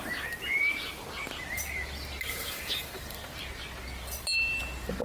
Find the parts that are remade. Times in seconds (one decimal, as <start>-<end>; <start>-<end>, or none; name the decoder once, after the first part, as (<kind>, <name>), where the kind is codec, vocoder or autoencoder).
none